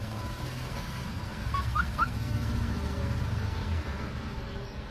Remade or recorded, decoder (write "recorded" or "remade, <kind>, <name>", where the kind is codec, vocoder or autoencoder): remade, codec, SNAC